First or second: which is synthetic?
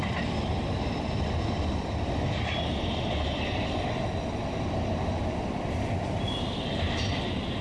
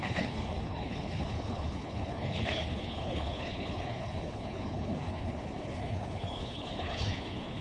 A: second